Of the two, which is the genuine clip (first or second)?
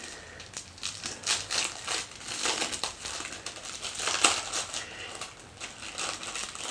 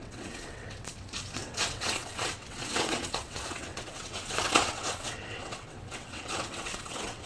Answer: first